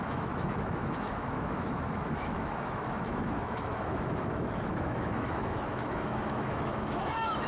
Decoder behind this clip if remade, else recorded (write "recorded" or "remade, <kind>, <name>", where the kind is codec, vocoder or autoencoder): remade, autoencoder, DAC-VAE